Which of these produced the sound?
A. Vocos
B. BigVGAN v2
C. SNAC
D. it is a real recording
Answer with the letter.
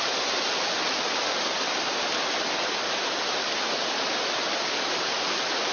D